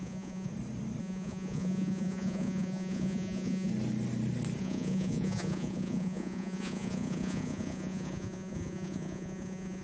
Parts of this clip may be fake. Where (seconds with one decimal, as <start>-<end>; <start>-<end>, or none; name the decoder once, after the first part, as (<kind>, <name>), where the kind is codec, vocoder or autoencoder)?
0.0-0.5 (vocoder, Vocos); 1.0-3.7; 4.6-9.8